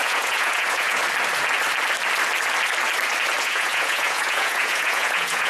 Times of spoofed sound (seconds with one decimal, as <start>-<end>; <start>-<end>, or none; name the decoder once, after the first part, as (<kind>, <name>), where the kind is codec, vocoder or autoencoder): 0.0-1.0 (vocoder, Vocos); 3.4-5.5